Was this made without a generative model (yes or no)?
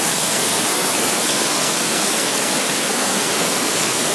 no